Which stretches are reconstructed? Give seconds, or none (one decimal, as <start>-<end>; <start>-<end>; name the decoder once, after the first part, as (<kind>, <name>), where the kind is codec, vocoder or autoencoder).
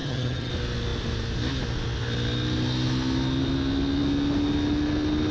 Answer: 0.0-0.5 (vocoder, HiFi-GAN)